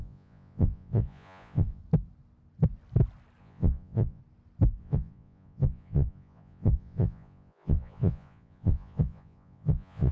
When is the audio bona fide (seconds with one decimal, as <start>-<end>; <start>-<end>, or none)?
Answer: 1.8-3.4; 4.2-4.8